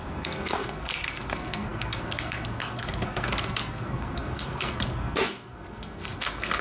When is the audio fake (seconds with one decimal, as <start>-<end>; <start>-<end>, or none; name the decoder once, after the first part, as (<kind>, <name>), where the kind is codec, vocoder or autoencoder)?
0.0-6.6 (codec, SNAC)